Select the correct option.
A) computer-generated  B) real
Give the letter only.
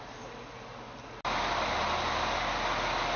B